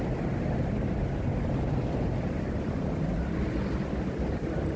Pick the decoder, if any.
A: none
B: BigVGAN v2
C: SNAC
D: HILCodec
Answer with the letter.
A